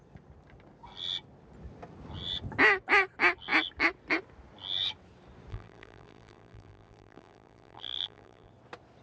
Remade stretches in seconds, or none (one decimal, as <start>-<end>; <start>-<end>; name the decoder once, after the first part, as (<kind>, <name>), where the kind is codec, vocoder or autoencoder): 5.5-8.5 (vocoder, BigVGAN v2)